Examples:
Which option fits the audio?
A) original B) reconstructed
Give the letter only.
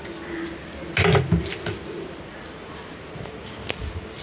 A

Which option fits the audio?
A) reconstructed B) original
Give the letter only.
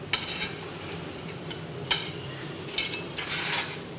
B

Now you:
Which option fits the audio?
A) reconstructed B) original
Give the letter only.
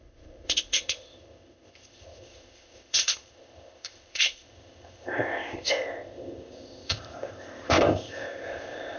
A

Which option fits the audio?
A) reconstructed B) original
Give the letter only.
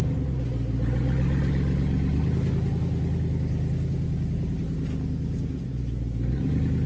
B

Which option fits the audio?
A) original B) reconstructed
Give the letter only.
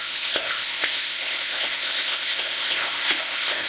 B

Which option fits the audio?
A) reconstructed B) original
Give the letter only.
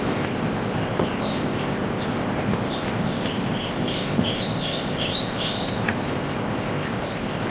A